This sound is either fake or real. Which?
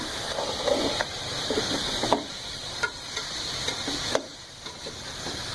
fake